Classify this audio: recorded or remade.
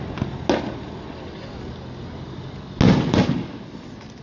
recorded